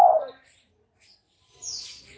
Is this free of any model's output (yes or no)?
yes